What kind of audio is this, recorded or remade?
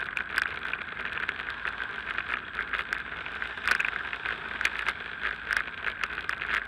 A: recorded